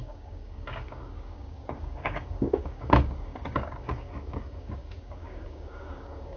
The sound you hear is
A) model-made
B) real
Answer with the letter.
A